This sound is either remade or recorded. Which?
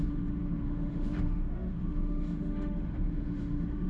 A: remade